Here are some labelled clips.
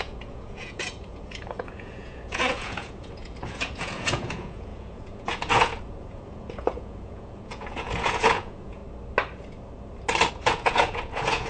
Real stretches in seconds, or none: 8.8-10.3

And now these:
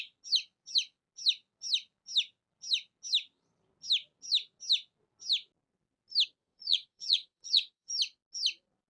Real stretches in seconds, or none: 0.0-6.4; 7.9-8.9

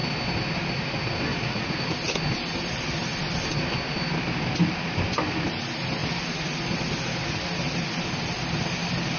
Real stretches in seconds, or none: 0.0-1.3; 1.8-9.2

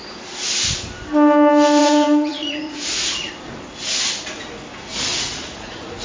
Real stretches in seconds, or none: 0.0-1.8; 3.3-5.1